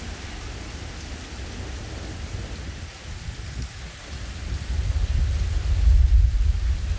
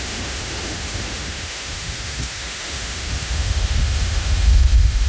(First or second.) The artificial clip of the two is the second